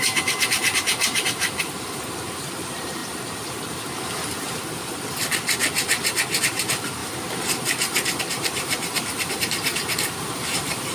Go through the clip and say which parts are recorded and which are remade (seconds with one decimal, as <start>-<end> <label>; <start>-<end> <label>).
0.0-3.0 remade; 3.0-6.4 recorded; 6.4-7.0 remade; 7.0-8.2 recorded; 8.2-9.7 remade; 9.7-10.5 recorded; 10.5-10.9 remade